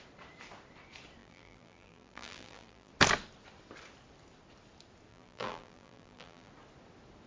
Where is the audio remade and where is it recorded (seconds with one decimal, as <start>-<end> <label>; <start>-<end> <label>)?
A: 0.0-1.2 recorded; 1.2-2.9 remade; 2.9-5.1 recorded; 5.1-6.5 remade; 6.5-7.3 recorded